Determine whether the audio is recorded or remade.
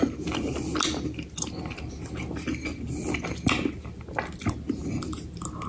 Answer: recorded